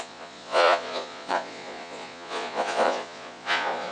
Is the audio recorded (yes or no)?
no